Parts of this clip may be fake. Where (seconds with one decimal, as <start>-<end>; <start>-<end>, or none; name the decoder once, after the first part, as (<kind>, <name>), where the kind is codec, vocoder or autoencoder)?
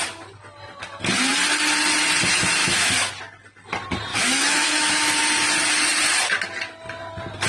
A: 2.6-3.1 (autoencoder, DAC-VAE); 4.1-5.2